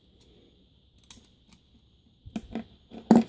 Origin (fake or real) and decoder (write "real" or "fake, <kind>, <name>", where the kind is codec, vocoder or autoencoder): real